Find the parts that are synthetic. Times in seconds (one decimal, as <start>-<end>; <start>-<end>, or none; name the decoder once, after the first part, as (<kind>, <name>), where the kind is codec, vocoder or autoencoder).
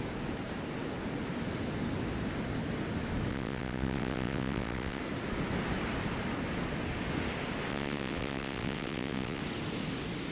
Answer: 3.3-5.0 (vocoder, WaveNeXt); 7.7-9.4